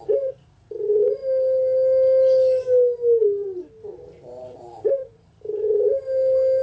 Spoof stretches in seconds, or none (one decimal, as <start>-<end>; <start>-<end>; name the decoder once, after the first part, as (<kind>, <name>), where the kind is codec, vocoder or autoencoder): none